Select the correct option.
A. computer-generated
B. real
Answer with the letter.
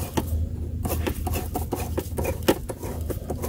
B